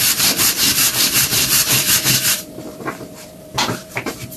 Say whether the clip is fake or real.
fake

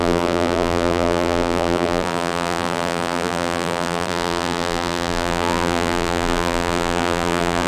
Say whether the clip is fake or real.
fake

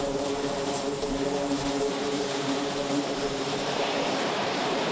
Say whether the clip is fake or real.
fake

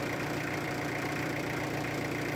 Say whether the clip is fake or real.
fake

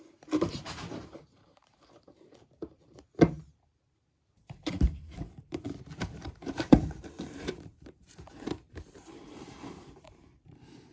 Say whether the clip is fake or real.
fake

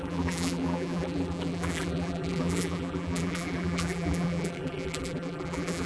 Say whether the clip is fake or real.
fake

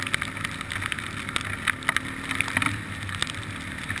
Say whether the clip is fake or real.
real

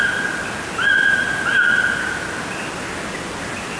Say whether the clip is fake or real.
real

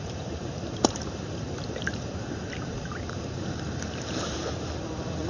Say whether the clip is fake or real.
fake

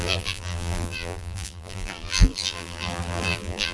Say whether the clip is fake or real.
fake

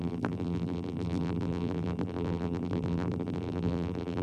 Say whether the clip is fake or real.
fake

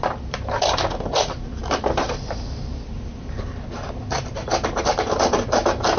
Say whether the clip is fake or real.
fake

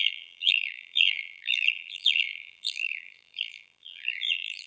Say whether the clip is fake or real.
fake